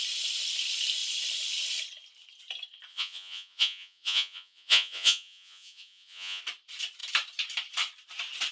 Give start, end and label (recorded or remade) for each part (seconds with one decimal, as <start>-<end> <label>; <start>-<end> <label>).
0.0-2.9 recorded; 2.9-6.4 remade; 6.4-8.5 recorded

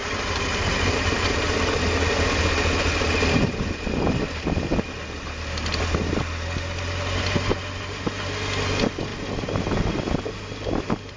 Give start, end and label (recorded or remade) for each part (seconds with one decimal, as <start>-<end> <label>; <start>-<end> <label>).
0.0-11.2 recorded

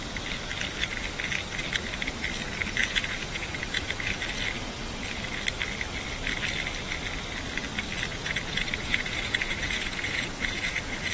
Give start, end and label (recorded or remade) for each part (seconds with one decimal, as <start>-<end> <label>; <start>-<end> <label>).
0.0-2.8 recorded; 2.8-4.1 remade; 4.1-8.1 recorded; 8.1-11.1 remade